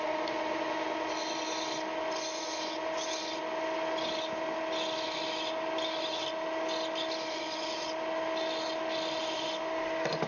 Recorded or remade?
recorded